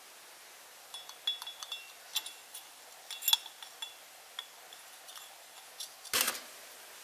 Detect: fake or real real